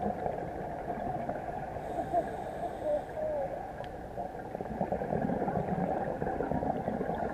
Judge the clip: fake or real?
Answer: real